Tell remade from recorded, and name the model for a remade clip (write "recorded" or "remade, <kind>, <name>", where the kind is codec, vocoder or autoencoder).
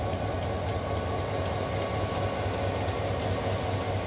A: recorded